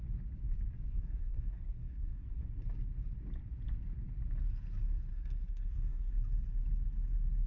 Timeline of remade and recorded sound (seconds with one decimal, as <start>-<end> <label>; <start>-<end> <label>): 0.0-0.9 recorded; 0.9-2.5 remade; 2.5-5.1 recorded; 5.1-6.1 remade; 6.1-7.5 recorded